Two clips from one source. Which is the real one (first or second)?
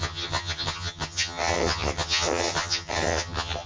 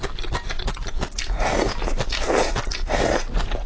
second